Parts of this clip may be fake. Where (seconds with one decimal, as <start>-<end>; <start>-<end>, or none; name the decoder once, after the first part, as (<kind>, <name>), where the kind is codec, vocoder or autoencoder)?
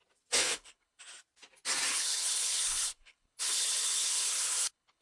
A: 0.4-1.0 (codec, HILCodec); 1.9-5.0